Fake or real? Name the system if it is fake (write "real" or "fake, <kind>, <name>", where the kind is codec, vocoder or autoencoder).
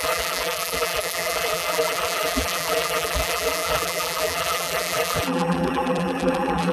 fake, vocoder, BigVGAN v2